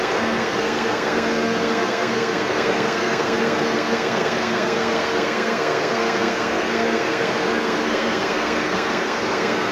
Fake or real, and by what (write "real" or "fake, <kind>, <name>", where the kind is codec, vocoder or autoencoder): fake, codec, SNAC